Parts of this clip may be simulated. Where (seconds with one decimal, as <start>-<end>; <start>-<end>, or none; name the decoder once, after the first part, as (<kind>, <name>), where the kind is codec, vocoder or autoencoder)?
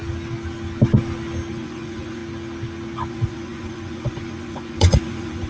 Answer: 1.5-2.2 (vocoder, Vocos); 3.1-5.5